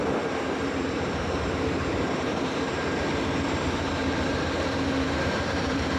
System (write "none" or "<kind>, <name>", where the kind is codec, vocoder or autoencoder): vocoder, BigVGAN v2